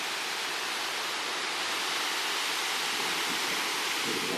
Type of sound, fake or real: real